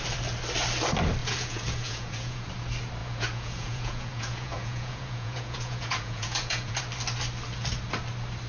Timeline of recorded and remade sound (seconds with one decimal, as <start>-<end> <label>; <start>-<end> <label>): 0.0-1.2 recorded; 1.2-2.5 remade; 2.5-3.0 recorded; 3.0-6.8 remade; 6.8-8.5 recorded